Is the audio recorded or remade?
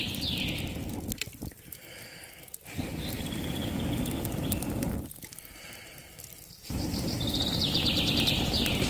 recorded